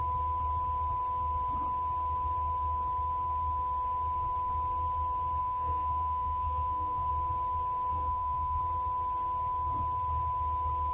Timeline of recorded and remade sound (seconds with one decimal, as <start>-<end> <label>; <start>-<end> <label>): 0.0-5.4 recorded; 5.4-7.1 remade; 7.1-7.9 recorded; 7.9-8.6 remade; 8.6-10.9 recorded